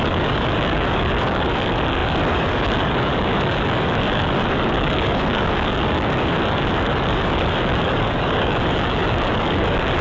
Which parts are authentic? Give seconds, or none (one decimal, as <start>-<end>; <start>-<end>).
none